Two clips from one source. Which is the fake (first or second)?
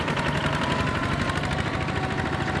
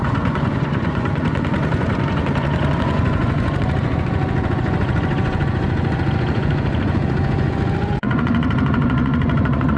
second